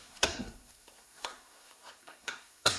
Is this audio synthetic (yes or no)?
yes